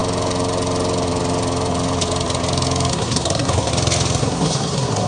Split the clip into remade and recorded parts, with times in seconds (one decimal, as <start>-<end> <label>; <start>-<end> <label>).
0.0-2.9 recorded; 2.9-3.7 remade; 3.7-4.2 recorded; 4.2-5.1 remade